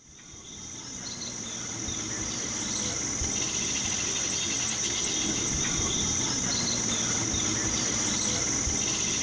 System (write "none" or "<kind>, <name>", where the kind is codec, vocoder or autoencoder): none